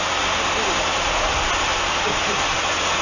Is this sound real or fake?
real